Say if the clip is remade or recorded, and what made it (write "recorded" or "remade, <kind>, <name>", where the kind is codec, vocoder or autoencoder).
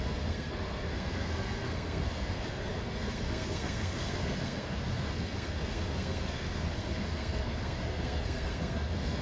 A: remade, codec, SNAC